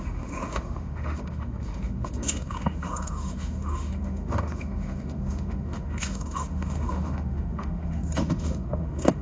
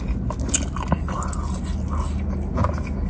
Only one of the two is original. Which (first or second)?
second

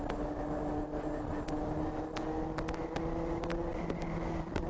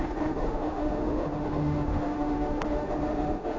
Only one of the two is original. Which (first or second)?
first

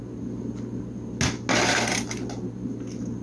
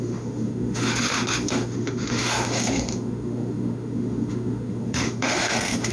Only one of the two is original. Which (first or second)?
first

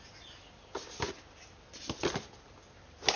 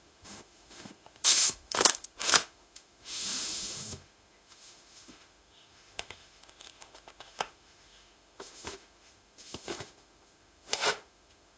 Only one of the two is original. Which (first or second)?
first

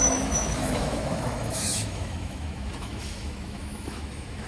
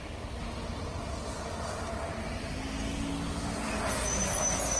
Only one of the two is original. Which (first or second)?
second